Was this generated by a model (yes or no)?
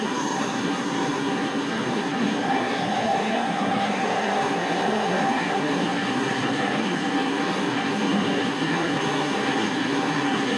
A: yes